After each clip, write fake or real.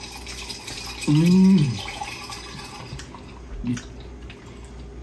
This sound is real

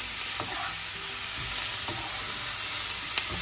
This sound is real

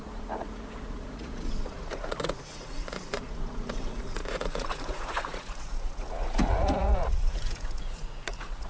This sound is fake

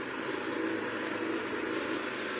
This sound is real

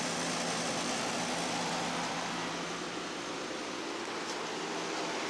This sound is real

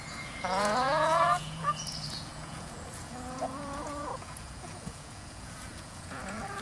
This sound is fake